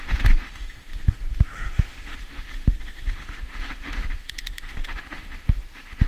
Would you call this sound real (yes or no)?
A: no